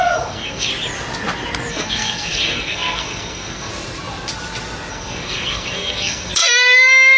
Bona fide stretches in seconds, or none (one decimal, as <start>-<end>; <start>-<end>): 0.7-1.7; 3.7-4.9